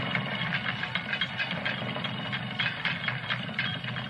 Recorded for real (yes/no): yes